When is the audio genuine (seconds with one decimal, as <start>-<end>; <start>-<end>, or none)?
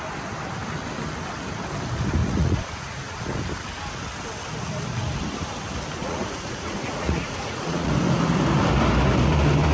0.0-2.2; 3.2-6.0; 7.9-9.7